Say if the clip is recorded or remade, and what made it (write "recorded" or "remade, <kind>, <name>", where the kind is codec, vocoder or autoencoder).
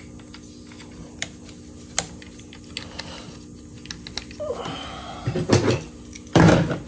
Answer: recorded